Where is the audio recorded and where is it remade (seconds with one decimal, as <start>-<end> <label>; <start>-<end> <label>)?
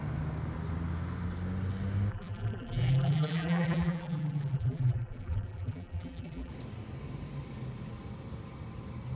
0.0-2.1 recorded; 2.1-6.5 remade; 6.5-9.2 recorded